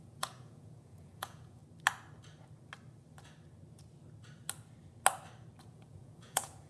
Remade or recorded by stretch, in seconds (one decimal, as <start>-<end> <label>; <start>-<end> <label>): 0.0-1.6 remade; 1.6-5.6 recorded; 5.6-6.7 remade